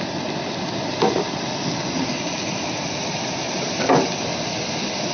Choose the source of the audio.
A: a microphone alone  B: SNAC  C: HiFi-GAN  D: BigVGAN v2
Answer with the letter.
A